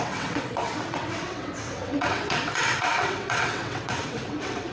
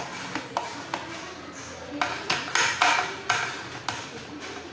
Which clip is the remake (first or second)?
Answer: first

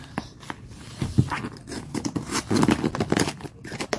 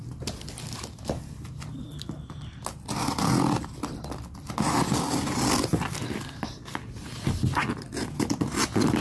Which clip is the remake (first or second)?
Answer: first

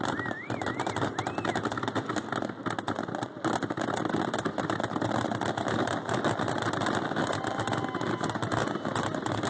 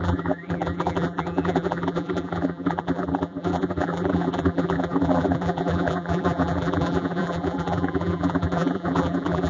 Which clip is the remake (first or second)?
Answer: second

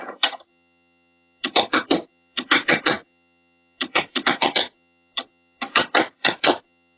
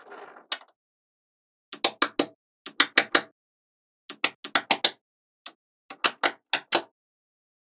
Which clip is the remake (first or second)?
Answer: first